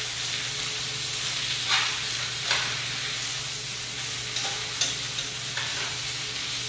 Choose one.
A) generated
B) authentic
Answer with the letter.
B